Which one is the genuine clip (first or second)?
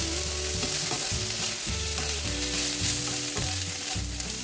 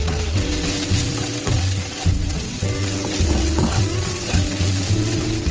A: first